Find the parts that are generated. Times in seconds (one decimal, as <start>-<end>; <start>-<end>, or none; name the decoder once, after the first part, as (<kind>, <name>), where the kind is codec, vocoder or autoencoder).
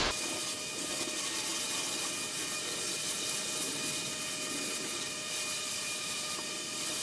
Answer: 0.0-1.5 (vocoder, BigVGAN v2); 5.7-7.0